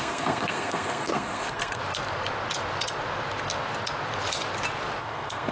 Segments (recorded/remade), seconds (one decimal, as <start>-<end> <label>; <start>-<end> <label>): 0.0-1.8 remade; 1.8-5.0 recorded; 5.0-5.5 remade